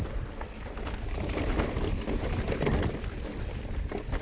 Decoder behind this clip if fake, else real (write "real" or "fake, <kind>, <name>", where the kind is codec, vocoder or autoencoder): real